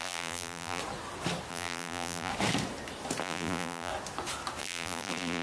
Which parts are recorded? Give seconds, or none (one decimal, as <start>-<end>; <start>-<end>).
0.8-1.5; 2.3-3.2; 3.9-4.6